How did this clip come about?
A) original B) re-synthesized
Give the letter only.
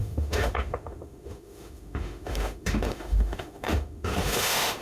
B